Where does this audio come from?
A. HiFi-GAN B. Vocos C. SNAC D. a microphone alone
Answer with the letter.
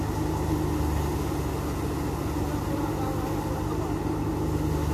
D